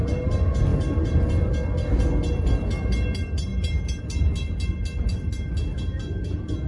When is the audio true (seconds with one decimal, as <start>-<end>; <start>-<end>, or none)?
0.0-6.7